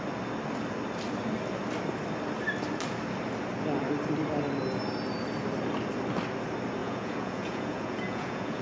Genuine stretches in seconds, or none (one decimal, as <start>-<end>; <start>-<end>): 0.0-6.8